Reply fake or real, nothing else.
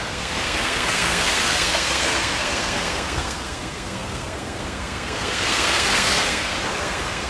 fake